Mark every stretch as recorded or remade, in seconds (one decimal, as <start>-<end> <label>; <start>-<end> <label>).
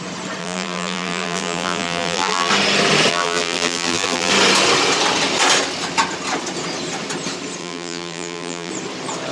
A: 0.0-0.4 recorded; 0.4-2.5 remade; 2.5-3.1 recorded; 3.1-4.3 remade; 4.3-7.6 recorded; 7.6-8.7 remade; 8.7-9.3 recorded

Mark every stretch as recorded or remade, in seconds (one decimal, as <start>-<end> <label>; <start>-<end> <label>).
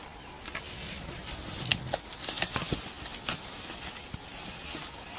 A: 0.0-5.2 recorded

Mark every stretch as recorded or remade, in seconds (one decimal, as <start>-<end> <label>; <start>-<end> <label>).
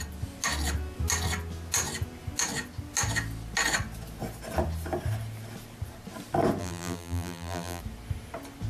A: 0.0-6.6 recorded; 6.6-7.8 remade; 7.8-8.7 recorded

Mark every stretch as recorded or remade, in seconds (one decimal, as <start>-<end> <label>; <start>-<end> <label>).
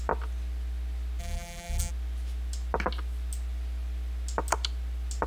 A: 0.0-1.2 recorded; 1.2-1.9 remade; 1.9-5.3 recorded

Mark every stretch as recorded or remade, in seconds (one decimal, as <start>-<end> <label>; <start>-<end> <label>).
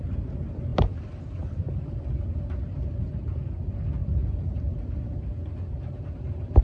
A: 0.0-4.0 recorded; 4.0-6.6 remade